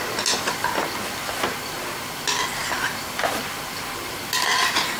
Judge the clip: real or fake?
real